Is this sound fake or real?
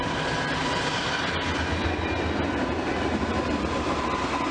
real